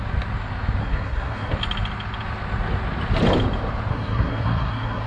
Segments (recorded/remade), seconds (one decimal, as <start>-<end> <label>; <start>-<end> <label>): 0.0-0.8 recorded; 0.8-1.5 remade; 1.5-3.9 recorded; 3.9-5.1 remade